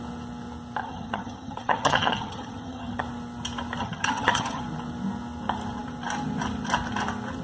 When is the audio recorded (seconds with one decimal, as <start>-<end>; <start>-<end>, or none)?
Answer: 0.0-0.8; 3.0-3.8; 4.6-7.4